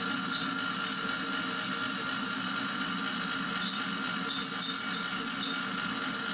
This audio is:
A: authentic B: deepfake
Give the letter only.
A